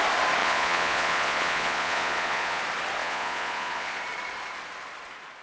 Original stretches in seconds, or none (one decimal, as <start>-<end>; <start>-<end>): 0.0-0.4; 2.6-3.0; 4.0-5.4